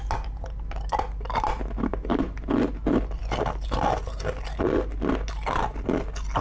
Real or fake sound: real